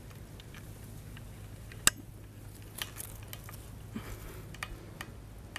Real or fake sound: real